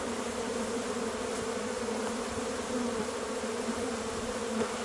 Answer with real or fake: real